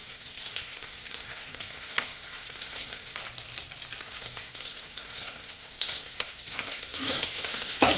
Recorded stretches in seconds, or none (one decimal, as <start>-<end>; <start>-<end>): 3.2-4.0